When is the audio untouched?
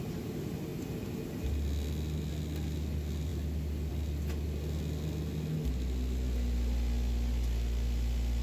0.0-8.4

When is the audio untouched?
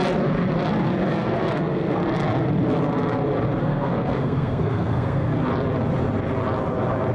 0.0-1.1; 2.0-3.6; 5.3-7.1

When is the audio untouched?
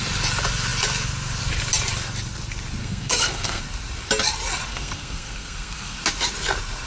0.0-2.8; 3.6-4.7; 6.0-6.9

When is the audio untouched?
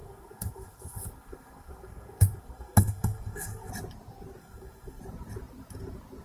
3.7-4.4; 5.0-6.2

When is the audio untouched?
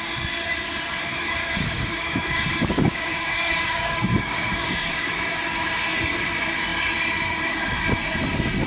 0.0-1.4; 5.2-8.7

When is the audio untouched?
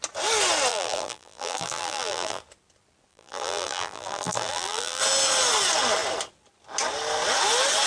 0.0-0.7; 2.4-3.1; 5.0-7.9